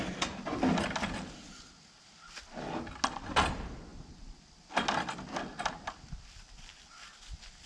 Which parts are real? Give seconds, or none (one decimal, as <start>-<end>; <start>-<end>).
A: 0.0-7.7